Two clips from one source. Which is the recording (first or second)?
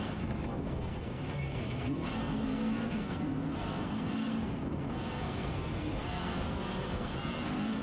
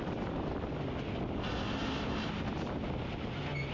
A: second